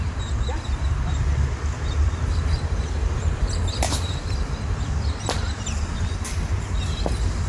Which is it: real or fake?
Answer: fake